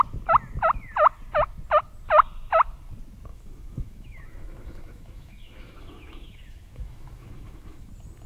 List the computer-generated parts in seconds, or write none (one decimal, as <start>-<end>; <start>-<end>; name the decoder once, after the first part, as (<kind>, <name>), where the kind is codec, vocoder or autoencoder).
3.3-7.9 (autoencoder, DAC-VAE)